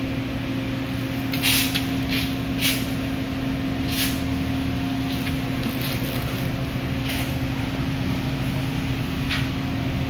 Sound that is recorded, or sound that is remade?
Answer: recorded